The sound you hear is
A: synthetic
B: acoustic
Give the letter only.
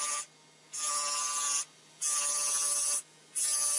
B